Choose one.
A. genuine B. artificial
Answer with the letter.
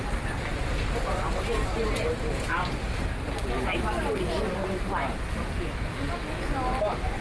A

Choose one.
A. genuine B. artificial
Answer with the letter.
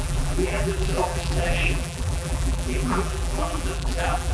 B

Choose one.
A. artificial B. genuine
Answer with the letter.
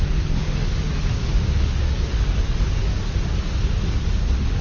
A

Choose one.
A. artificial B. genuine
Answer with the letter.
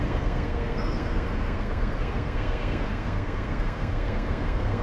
A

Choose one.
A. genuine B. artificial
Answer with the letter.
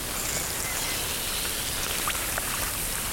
A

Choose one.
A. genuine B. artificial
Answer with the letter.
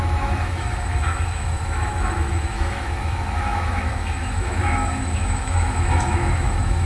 B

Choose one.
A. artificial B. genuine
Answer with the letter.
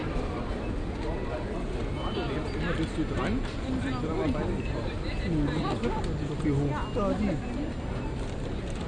B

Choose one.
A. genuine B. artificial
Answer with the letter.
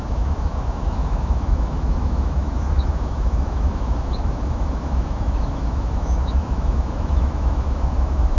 B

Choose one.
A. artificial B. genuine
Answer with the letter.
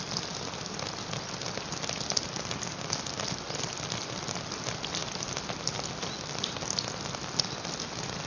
B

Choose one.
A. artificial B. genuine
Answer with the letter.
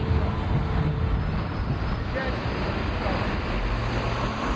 B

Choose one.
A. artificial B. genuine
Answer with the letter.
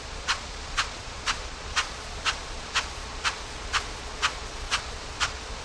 A